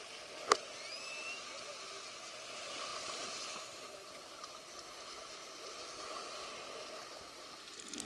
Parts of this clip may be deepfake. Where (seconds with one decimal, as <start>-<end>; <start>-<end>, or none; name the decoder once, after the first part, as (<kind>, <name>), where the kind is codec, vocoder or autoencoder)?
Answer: none